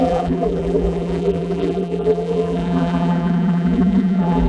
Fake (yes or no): yes